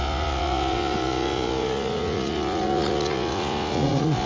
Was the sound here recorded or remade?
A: remade